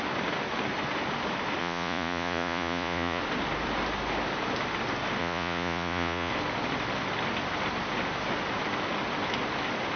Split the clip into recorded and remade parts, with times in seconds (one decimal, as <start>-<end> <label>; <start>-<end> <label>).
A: 0.0-1.6 recorded; 1.6-3.2 remade; 3.2-5.2 recorded; 5.2-6.3 remade; 6.3-10.0 recorded